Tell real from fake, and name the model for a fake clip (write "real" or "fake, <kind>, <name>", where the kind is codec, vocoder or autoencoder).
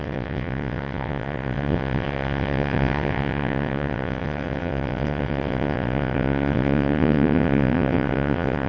fake, vocoder, WaveNeXt